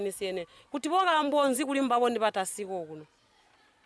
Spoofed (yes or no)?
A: no